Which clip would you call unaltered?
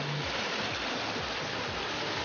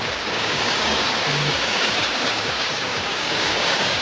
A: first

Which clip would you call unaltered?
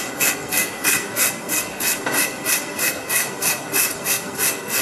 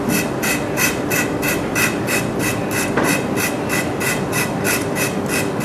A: second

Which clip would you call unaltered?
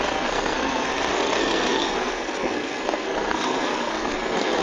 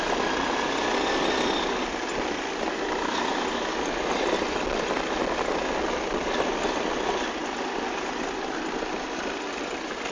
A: second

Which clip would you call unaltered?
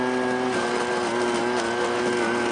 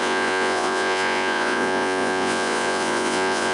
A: first